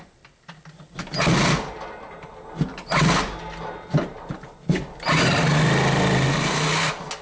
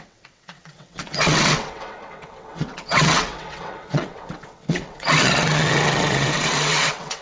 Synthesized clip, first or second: second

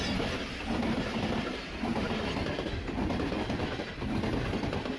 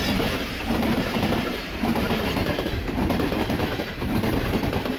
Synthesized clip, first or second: second